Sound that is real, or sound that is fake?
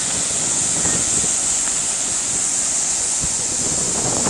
fake